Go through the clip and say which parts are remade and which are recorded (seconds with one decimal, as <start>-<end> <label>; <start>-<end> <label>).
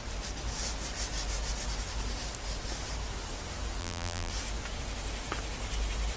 0.0-3.8 recorded; 3.8-4.3 remade; 4.3-6.2 recorded